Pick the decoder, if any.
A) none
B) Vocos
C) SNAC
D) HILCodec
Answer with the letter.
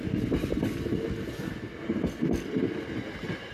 A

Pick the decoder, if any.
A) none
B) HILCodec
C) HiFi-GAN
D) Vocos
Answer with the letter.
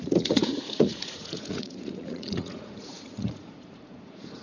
D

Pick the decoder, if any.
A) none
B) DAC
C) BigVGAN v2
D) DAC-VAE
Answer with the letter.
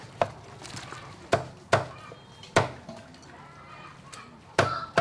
A